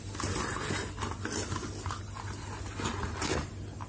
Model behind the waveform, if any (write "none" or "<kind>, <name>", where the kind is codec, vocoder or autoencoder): none